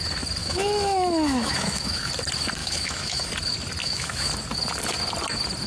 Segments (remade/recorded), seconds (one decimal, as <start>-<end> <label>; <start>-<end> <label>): 0.0-0.4 recorded; 0.4-2.1 remade; 2.1-2.6 recorded; 2.6-3.3 remade; 3.3-3.8 recorded; 3.8-4.3 remade; 4.3-5.7 recorded